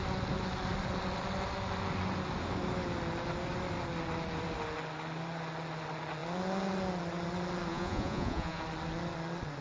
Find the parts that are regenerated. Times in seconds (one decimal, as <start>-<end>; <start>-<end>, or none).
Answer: 7.7-8.6